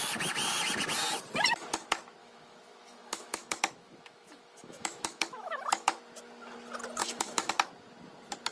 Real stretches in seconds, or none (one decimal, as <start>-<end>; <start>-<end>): 0.0-2.2; 6.0-7.0; 7.5-8.5